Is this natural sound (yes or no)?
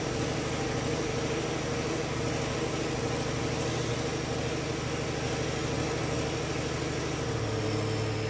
yes